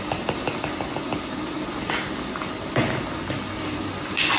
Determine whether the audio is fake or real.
real